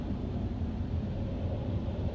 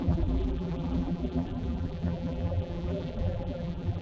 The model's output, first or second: second